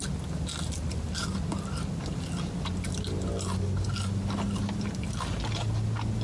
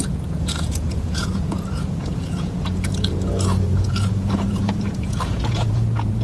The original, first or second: first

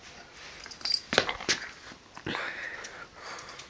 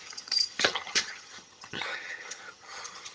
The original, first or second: first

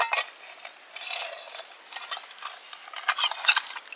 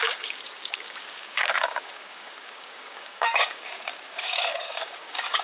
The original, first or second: first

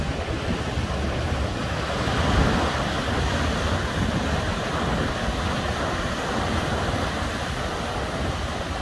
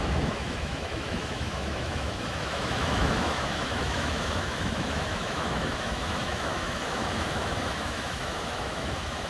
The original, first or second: first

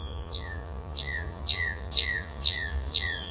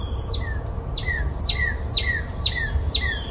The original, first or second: second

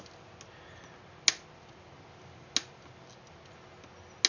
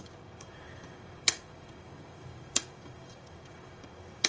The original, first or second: first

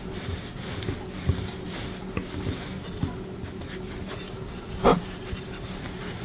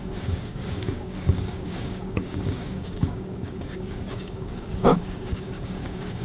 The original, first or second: first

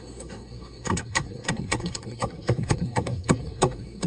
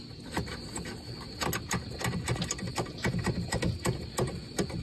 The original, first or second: second